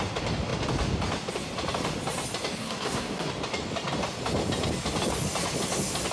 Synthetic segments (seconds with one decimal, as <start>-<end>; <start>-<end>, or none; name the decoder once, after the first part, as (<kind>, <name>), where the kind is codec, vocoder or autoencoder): 2.6-3.3 (codec, SNAC)